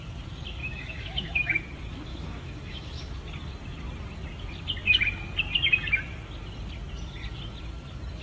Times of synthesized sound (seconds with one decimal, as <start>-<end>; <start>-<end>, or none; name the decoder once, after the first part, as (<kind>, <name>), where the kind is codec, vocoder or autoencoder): 0.6-1.6 (autoencoder, DAC-VAE); 2.1-3.1